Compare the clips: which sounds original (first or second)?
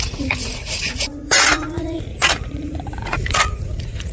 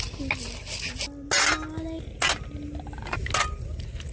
second